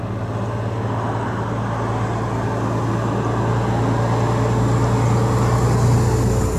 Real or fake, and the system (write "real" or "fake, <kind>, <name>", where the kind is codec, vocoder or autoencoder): real